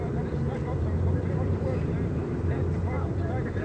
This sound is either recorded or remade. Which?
recorded